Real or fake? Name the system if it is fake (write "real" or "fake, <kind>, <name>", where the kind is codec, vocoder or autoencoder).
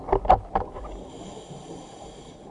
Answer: real